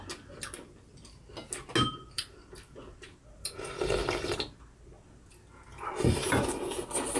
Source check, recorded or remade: recorded